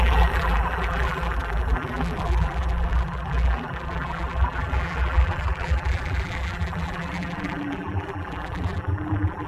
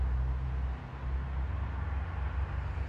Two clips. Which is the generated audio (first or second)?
first